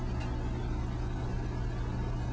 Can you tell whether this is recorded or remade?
recorded